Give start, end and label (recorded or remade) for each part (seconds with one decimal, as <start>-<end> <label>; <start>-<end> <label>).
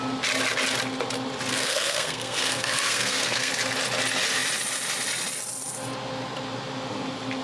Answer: 0.0-1.5 recorded; 1.5-3.5 remade; 3.5-7.4 recorded